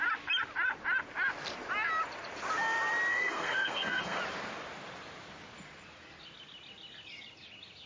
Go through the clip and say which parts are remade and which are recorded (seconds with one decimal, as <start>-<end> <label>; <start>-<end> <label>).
0.0-3.1 recorded; 3.1-4.2 remade; 4.2-7.9 recorded

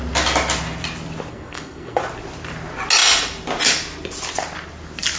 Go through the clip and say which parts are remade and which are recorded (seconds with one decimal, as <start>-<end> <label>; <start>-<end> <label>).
0.0-1.3 recorded; 1.3-2.0 remade; 2.0-5.2 recorded